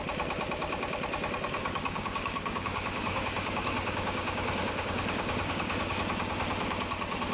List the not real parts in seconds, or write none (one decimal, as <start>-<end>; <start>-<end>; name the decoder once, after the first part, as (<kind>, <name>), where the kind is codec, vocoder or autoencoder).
1.6-6.0 (codec, DAC)